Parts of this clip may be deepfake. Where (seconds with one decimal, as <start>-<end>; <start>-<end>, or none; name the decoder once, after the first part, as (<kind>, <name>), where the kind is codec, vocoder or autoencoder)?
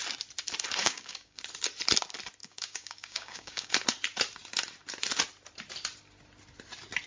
0.8-1.4 (codec, DAC); 2.4-3.7